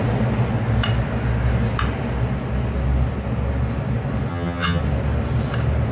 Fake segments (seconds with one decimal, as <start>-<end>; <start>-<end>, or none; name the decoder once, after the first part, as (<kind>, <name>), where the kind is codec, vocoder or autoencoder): 4.3-4.8 (vocoder, HiFi-GAN)